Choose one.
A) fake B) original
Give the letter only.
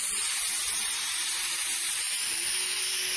B